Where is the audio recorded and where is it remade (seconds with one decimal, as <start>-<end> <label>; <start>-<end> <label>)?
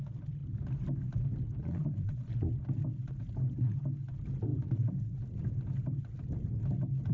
0.0-1.6 recorded; 1.6-2.5 remade; 2.5-7.1 recorded